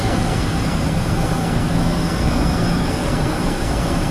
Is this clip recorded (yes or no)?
no